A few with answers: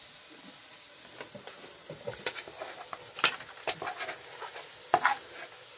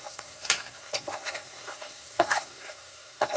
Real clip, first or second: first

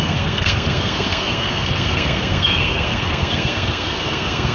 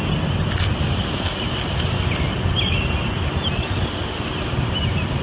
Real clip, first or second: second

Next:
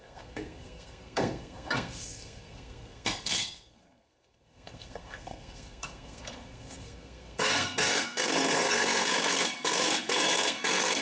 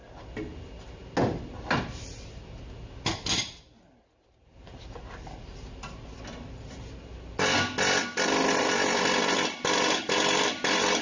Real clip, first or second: second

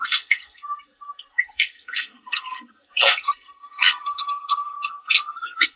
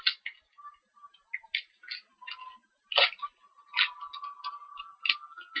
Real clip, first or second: second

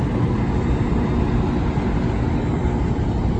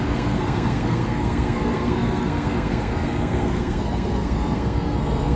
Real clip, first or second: first